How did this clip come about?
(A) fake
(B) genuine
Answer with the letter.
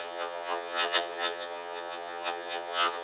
A